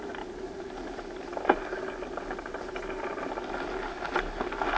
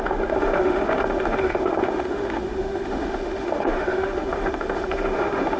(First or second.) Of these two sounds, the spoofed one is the second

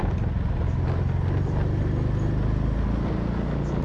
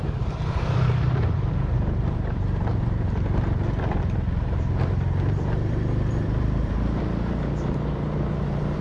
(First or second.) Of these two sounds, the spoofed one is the second